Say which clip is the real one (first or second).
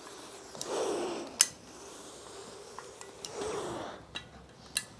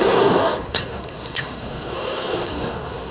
first